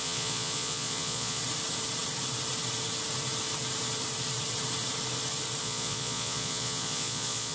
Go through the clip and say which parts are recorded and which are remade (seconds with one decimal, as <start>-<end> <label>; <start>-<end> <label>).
0.0-1.4 remade; 1.4-5.6 recorded; 5.6-7.5 remade